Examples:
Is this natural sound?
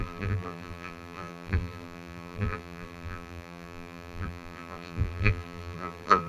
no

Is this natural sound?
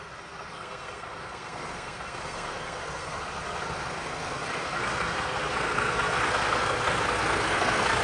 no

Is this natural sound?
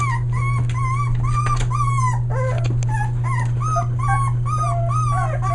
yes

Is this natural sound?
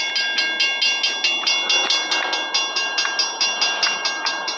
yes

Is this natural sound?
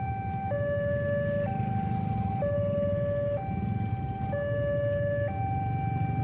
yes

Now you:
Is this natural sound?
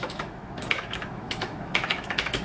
no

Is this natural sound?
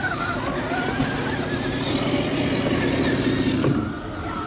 yes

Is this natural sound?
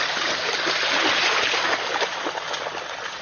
yes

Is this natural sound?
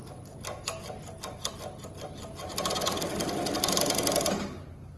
yes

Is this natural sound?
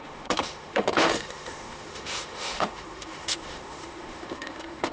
no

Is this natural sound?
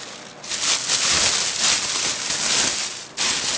yes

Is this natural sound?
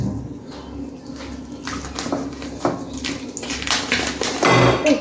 yes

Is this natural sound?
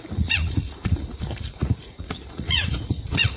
no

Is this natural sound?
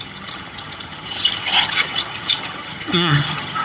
no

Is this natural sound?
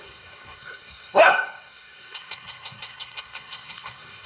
no